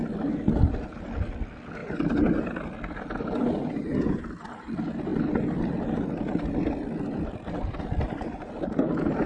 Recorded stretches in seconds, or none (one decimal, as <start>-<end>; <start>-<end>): 0.0-9.3